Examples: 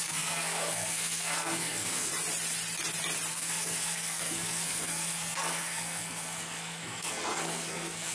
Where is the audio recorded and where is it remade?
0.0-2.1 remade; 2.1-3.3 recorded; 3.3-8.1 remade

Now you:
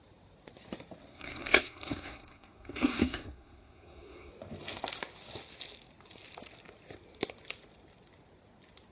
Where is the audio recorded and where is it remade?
0.0-1.1 recorded; 1.1-4.3 remade; 4.3-8.9 recorded

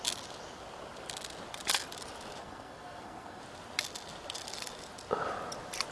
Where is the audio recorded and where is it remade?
0.0-2.4 recorded; 2.4-3.4 remade; 3.4-5.9 recorded

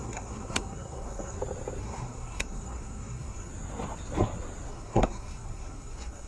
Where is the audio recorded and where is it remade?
0.0-1.4 remade; 1.4-1.8 recorded; 1.8-3.5 remade; 3.5-4.7 recorded; 4.7-6.3 remade

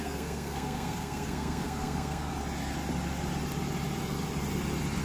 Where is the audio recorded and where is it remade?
0.0-2.3 remade; 2.3-5.0 recorded

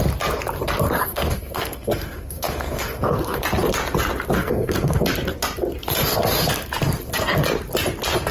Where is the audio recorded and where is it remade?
0.0-1.1 recorded; 1.1-3.4 remade; 3.4-4.4 recorded; 4.4-5.0 remade; 5.0-8.3 recorded

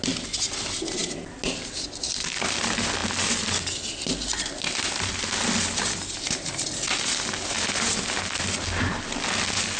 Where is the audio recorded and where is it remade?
0.0-9.8 recorded